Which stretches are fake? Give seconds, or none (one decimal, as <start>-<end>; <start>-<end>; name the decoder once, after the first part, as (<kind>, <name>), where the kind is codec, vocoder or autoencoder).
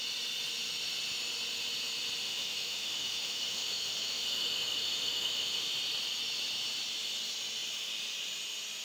2.2-5.7 (autoencoder, DAC-VAE)